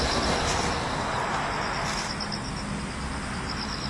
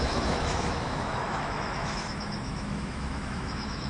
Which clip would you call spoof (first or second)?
second